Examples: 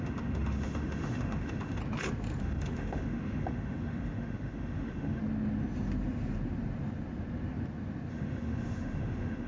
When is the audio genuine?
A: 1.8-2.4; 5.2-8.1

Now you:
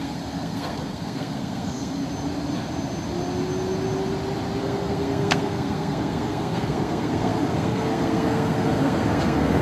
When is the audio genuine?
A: 2.0-4.6

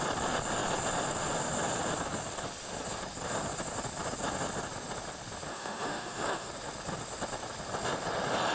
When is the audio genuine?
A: 0.0-5.5; 6.5-8.5

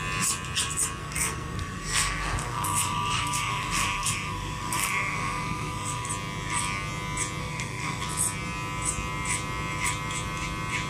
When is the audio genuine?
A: 0.0-1.0; 6.1-7.4; 8.0-10.9

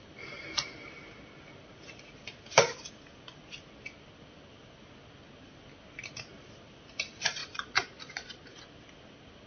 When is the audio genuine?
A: 0.0-7.4; 8.6-9.5

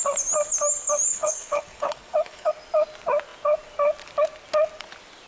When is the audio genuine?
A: 0.0-1.1; 2.5-5.3

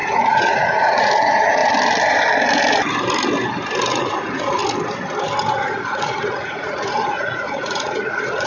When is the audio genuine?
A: 1.6-3.9; 4.6-5.5